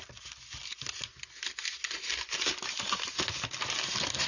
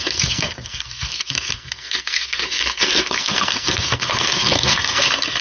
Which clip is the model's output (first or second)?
second